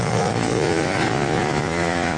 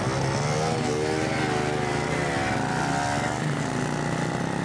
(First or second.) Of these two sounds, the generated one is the first